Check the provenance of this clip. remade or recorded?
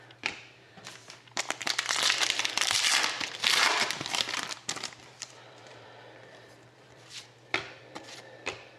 remade